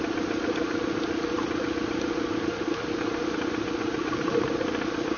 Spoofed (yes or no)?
no